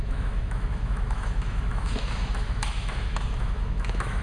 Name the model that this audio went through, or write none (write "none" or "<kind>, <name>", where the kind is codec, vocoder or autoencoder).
autoencoder, DAC-VAE